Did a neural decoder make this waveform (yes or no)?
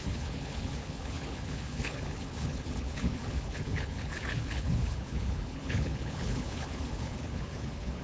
yes